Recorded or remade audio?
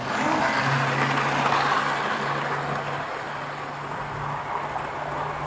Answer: recorded